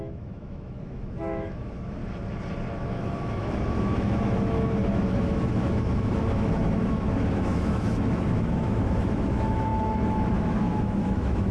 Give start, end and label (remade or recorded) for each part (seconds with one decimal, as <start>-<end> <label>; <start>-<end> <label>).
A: 0.0-2.0 remade; 2.0-2.9 recorded; 2.9-11.5 remade